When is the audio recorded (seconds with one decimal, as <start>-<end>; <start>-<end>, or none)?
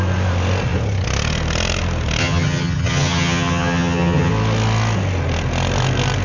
0.0-2.2; 4.3-6.2